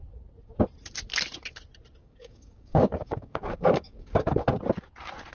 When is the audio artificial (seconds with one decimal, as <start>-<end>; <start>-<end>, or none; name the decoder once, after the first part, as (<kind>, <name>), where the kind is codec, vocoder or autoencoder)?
2.0-4.6 (codec, DAC)

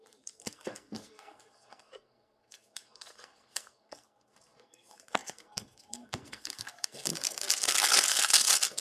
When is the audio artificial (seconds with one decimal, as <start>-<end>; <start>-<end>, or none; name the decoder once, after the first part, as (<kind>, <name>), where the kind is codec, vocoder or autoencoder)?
0.0-8.8 (codec, SNAC)

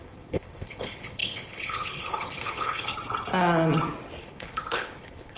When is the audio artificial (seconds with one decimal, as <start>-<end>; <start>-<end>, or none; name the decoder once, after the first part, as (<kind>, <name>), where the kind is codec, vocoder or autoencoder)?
0.0-2.9 (codec, HILCodec); 4.2-5.4

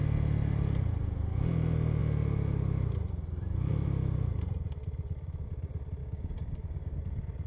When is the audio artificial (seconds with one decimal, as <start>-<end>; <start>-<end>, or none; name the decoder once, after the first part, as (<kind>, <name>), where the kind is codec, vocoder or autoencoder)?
6.0-7.0 (codec, DAC)

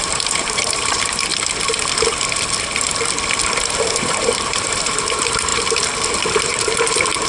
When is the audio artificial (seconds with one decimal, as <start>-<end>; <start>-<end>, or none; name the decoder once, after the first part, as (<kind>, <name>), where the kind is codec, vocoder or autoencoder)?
0.0-1.3 (vocoder, BigVGAN v2); 3.9-5.5; 6.4-7.3

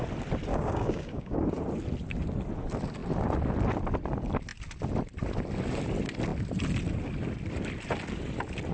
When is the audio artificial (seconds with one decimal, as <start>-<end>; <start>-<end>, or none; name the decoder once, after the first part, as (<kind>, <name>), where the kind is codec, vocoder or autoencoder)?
0.5-1.4 (codec, DAC)

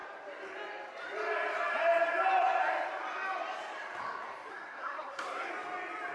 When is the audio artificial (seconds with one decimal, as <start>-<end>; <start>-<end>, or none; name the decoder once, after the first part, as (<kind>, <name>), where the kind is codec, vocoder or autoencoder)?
4.5-5.5 (codec, SNAC)

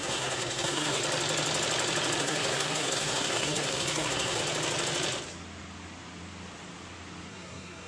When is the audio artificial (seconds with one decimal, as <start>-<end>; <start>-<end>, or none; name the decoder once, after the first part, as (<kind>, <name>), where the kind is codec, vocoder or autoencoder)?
0.0-1.0 (codec, SNAC); 2.2-4.4; 7.3-7.9